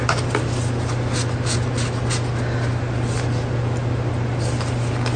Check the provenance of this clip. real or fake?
real